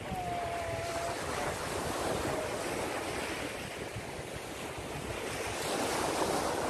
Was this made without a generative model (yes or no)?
yes